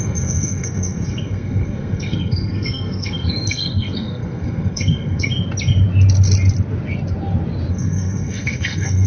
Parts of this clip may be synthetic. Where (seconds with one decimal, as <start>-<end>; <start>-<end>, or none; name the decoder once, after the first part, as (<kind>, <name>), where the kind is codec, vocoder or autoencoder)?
0.0-5.3 (codec, SNAC); 7.7-9.1